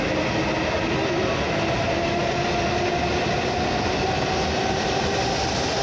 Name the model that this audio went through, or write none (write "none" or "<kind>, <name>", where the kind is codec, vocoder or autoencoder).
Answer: none